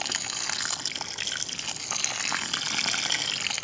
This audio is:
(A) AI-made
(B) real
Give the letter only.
B